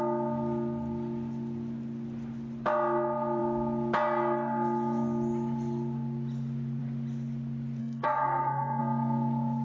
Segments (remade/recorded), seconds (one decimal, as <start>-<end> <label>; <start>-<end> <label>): 0.0-7.8 recorded; 7.8-8.8 remade; 8.8-9.6 recorded